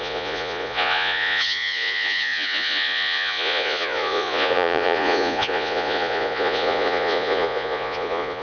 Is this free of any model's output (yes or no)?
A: no